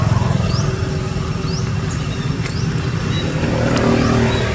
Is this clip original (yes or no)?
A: yes